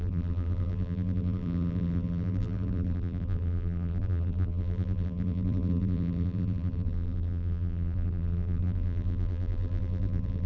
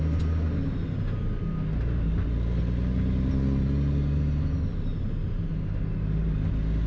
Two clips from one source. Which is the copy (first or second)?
first